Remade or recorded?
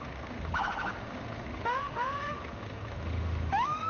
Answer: remade